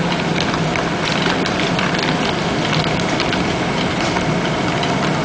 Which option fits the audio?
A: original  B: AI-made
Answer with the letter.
A